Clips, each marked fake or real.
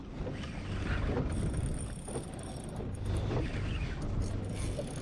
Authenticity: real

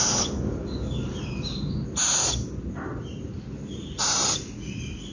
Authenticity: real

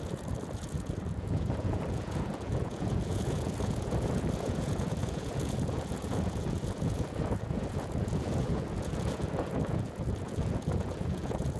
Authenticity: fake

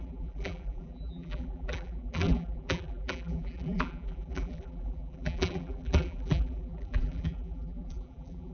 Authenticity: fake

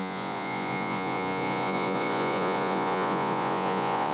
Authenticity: fake